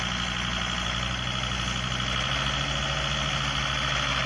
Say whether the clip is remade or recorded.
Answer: recorded